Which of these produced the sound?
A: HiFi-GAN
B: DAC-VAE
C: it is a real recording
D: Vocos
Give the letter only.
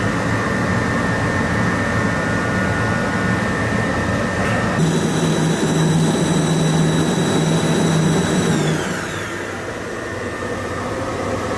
C